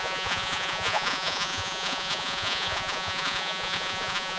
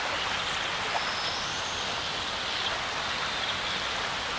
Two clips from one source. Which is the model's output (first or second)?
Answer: first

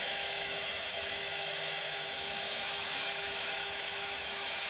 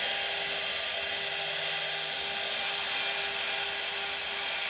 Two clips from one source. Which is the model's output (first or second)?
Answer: first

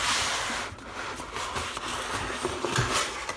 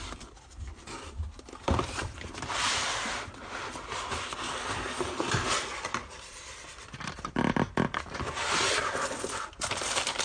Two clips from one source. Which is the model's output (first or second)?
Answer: second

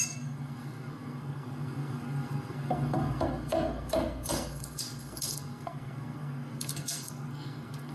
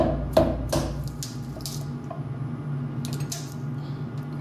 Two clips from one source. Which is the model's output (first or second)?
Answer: first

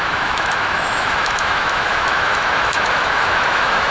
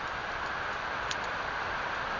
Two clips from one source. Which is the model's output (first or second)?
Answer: first